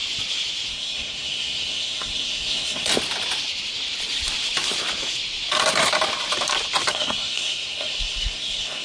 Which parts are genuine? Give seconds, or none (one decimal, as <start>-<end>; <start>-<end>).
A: 0.0-0.7; 2.9-6.9